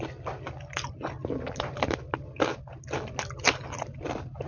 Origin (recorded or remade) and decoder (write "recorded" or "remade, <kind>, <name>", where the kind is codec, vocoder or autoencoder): recorded